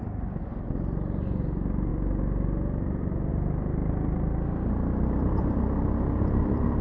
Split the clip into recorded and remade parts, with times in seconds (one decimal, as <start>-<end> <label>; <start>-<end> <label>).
0.0-6.8 recorded

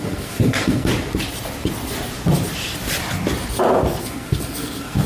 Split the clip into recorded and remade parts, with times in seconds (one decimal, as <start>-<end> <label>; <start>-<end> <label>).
0.0-0.9 remade; 0.9-4.0 recorded; 4.0-5.1 remade

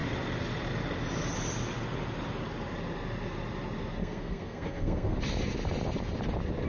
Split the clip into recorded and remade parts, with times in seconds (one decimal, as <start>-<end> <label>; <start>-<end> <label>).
0.0-4.0 recorded; 4.0-5.2 remade; 5.2-6.7 recorded

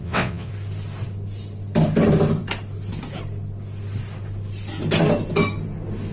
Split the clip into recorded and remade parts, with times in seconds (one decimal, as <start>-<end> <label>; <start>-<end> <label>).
0.0-0.5 remade; 0.5-6.1 recorded

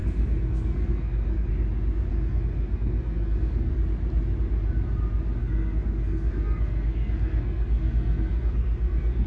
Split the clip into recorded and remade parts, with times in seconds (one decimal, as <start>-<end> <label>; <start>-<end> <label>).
0.0-1.5 remade; 1.5-2.1 recorded; 2.1-3.7 remade; 3.7-5.4 recorded; 5.4-9.3 remade